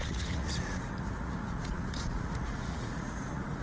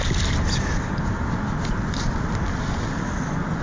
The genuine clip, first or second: second